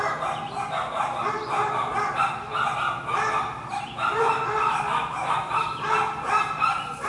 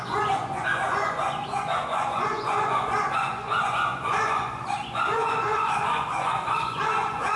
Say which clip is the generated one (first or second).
second